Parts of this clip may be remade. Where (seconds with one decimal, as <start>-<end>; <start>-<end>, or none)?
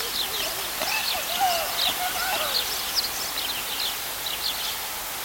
none